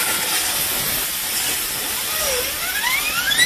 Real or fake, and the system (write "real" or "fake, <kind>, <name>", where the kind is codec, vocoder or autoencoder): real